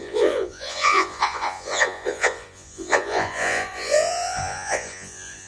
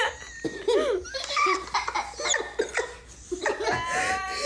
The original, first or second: second